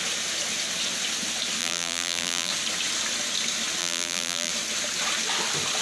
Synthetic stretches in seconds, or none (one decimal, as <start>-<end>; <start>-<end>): 1.6-2.5; 3.8-4.5